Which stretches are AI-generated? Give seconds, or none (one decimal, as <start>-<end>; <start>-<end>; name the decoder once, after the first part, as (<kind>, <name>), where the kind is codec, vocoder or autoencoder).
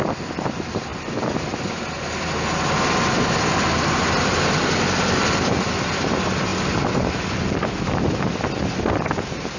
none